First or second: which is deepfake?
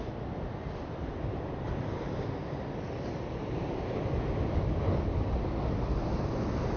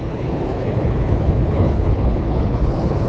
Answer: second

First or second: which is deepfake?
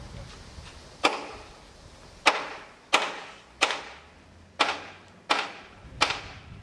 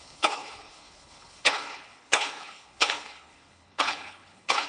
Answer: second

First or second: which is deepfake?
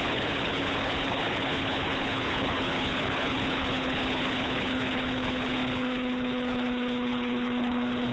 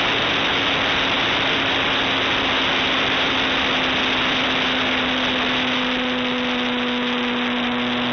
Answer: first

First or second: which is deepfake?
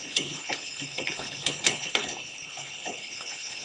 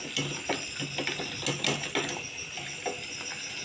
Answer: first